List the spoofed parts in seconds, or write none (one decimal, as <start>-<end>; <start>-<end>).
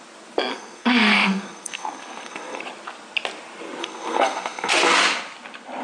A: 0.5-2.6; 3.8-4.7